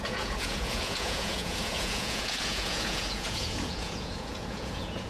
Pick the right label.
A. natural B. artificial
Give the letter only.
B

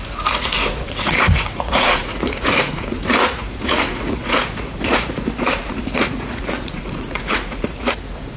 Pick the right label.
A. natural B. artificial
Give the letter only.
B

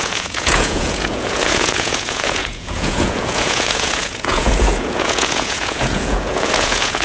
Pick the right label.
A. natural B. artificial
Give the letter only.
B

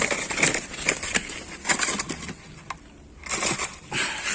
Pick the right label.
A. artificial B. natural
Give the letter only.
B